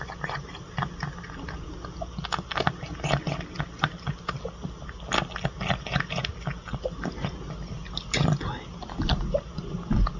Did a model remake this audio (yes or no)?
no